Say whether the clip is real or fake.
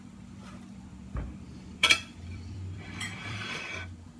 fake